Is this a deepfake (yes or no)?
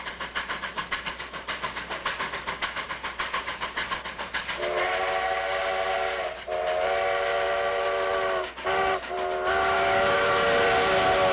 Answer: no